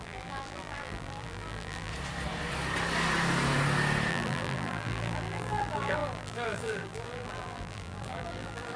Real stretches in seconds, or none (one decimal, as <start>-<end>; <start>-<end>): 1.9-4.1